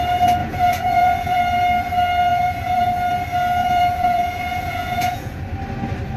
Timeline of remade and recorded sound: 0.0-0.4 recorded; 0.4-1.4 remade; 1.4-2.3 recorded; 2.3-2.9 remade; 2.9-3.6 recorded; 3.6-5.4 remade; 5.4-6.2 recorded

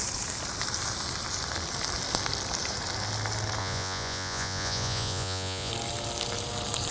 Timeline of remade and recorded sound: 0.0-3.6 recorded; 3.6-5.7 remade; 5.7-6.9 recorded

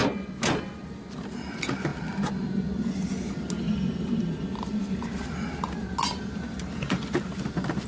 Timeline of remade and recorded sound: 0.0-7.9 recorded

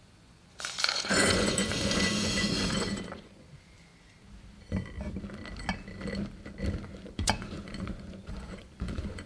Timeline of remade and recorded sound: 0.0-3.9 remade; 3.9-6.8 recorded; 6.8-9.3 remade

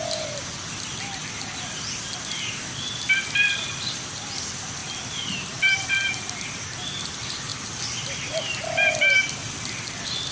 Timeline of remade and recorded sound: 0.0-10.3 recorded

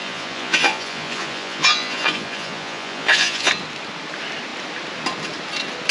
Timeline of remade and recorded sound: 0.0-3.5 remade; 3.5-5.9 recorded

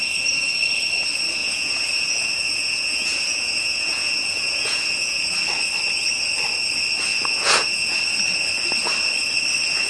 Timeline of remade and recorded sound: 0.0-1.4 recorded; 1.4-5.2 remade; 5.2-7.1 recorded; 7.1-8.0 remade; 8.0-9.9 recorded